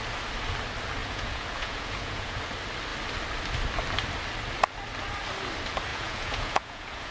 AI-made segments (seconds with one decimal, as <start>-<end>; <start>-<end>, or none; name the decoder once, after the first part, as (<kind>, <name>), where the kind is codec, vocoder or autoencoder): 1.0-2.4 (vocoder, Vocos); 5.9-7.1

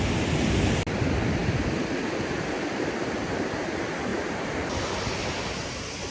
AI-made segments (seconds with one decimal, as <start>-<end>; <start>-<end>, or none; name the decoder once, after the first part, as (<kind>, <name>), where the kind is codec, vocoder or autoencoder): 1.4-2.5 (vocoder, BigVGAN v2); 4.1-6.1

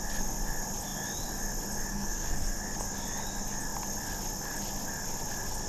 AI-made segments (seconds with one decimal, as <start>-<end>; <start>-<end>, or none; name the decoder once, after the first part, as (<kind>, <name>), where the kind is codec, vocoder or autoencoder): 1.9-2.6 (codec, SNAC)

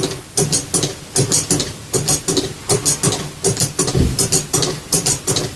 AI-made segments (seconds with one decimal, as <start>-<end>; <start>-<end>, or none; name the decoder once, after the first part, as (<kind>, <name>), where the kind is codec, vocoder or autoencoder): none

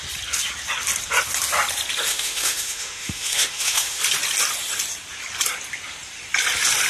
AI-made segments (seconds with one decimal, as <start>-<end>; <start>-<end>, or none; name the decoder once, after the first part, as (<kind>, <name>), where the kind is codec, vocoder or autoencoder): 2.1-4.0 (autoencoder, DAC-VAE)

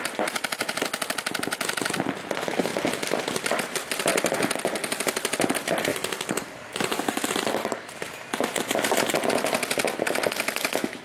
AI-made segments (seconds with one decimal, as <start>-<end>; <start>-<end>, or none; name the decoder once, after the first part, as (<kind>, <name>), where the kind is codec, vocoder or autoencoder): 5.9-7.3 (codec, DAC)

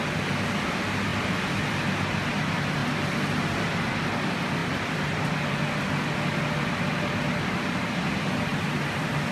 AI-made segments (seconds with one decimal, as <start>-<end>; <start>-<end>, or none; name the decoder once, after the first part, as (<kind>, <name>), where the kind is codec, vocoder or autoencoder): 4.6-5.6 (vocoder, BigVGAN v2); 8.5-9.3

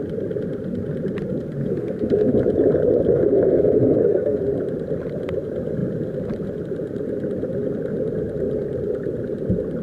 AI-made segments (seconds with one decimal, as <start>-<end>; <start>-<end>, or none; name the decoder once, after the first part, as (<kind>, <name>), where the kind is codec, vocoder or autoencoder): 1.6-2.3 (codec, SNAC); 3.1-4.4